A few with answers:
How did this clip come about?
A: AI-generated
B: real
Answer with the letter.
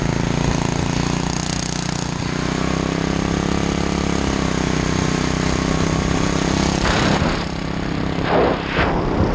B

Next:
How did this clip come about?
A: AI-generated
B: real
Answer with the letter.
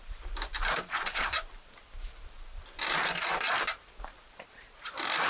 A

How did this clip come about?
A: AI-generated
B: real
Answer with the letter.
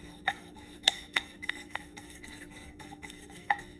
A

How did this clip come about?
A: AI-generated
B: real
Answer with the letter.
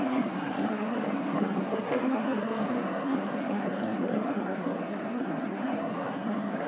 A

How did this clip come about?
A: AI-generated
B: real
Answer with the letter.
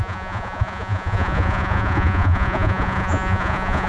A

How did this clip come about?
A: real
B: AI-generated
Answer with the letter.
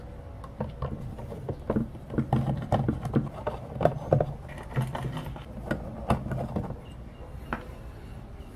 A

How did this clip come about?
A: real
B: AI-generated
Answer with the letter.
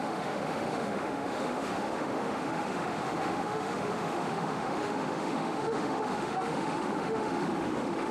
B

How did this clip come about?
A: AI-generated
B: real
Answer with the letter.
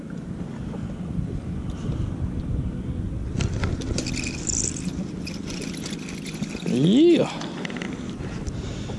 B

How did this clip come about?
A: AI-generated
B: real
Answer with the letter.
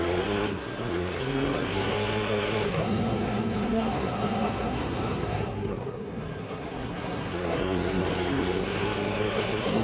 A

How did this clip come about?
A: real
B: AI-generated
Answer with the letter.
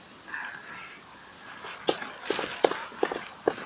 A